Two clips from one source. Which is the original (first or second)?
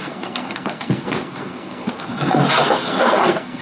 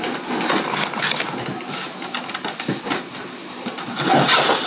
second